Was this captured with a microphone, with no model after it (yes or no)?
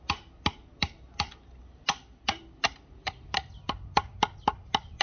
yes